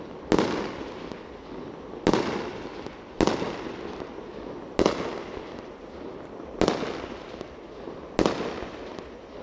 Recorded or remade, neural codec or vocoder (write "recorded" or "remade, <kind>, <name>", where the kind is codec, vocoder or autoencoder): recorded